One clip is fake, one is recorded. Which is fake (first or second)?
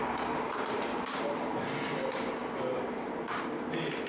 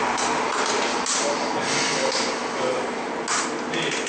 first